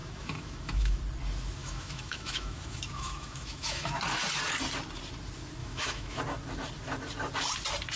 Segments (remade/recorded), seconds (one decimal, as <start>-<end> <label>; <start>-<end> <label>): 0.0-1.0 remade; 1.0-1.6 recorded; 1.6-4.0 remade; 4.0-5.6 recorded; 5.6-6.2 remade; 6.2-8.0 recorded